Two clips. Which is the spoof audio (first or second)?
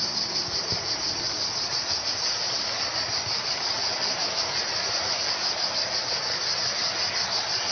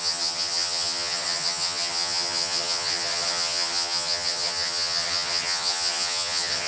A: second